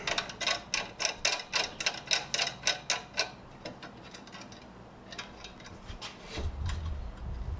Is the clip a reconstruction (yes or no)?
no